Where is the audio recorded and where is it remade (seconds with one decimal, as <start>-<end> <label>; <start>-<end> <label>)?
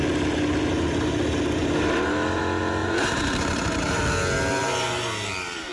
0.0-1.6 recorded; 1.6-2.4 remade; 2.4-2.8 recorded; 2.8-4.0 remade; 4.0-4.6 recorded; 4.6-5.7 remade